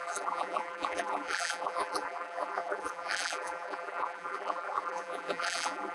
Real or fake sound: fake